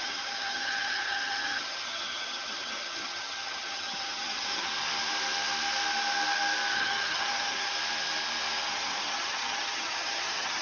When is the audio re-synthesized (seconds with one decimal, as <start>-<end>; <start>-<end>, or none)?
0.0-4.7; 6.7-7.7; 8.7-10.6